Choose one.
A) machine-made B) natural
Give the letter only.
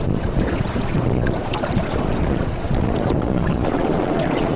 A